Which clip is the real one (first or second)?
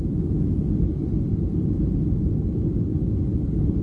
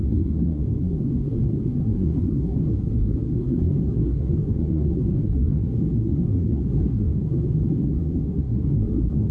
first